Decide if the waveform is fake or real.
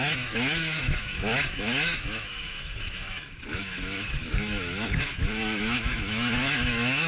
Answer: fake